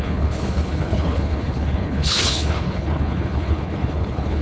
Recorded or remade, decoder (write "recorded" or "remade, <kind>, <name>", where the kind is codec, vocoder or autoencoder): remade, codec, HILCodec